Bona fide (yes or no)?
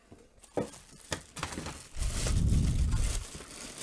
yes